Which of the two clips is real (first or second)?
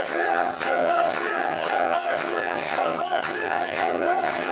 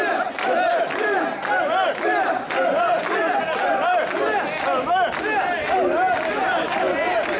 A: second